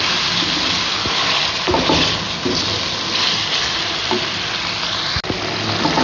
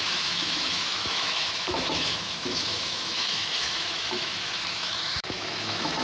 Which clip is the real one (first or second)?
first